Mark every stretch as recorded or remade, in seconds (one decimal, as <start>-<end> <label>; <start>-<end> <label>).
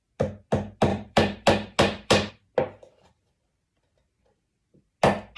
0.0-0.9 recorded; 0.9-2.3 remade; 2.3-5.4 recorded